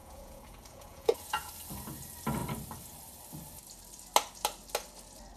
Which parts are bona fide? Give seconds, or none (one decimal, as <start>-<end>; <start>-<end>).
1.5-5.4